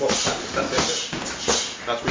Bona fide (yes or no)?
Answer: yes